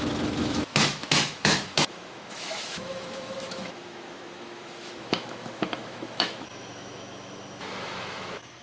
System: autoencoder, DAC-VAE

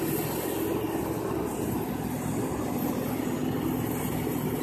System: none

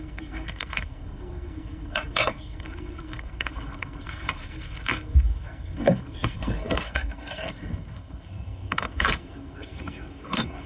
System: codec, SNAC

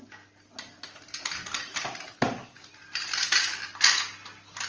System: none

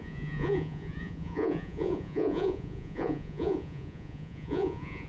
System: vocoder, Vocos